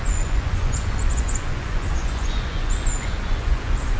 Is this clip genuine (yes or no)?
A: no